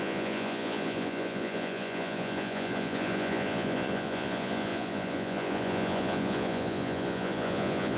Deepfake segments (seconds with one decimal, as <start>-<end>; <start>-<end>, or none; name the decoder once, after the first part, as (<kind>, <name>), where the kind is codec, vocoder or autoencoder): 0.0-8.0 (vocoder, Vocos)